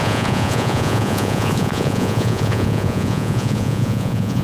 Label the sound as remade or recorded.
remade